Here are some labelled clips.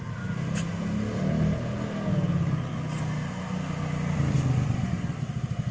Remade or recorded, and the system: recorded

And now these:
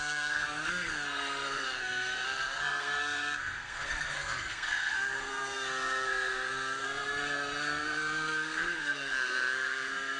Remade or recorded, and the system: remade, codec, SNAC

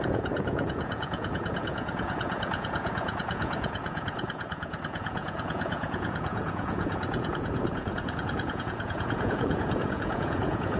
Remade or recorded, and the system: remade, vocoder, Vocos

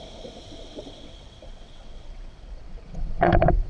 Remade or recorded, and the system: remade, vocoder, WaveNeXt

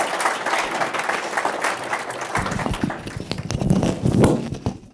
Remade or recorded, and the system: recorded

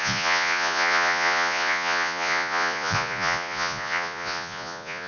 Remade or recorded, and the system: remade, vocoder, Vocos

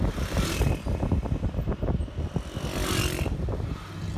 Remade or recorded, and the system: recorded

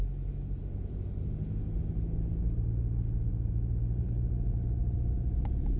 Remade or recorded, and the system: recorded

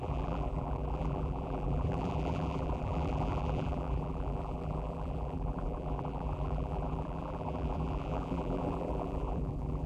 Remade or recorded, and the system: remade, vocoder, BigVGAN v2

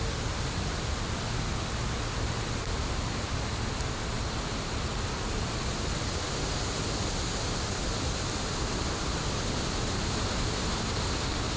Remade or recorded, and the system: recorded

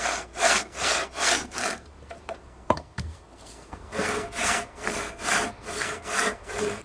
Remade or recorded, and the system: remade, codec, SNAC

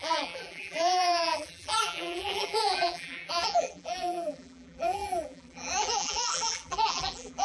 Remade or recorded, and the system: remade, vocoder, BigVGAN v2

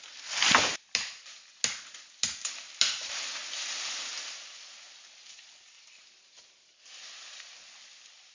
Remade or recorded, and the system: recorded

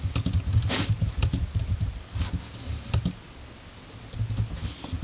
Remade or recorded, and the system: recorded